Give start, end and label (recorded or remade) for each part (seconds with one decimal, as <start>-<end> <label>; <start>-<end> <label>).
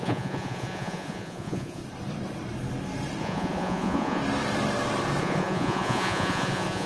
0.0-1.8 remade; 1.8-3.2 recorded; 3.2-4.2 remade; 4.2-5.2 recorded; 5.2-6.9 remade